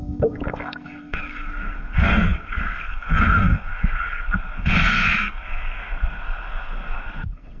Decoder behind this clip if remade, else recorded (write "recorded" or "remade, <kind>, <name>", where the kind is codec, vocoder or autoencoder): remade, codec, SNAC